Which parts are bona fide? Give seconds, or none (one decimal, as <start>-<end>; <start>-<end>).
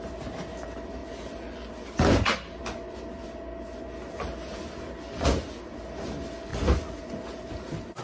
0.0-8.0